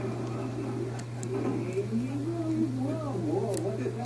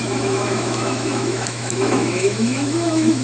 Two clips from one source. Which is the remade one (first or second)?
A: second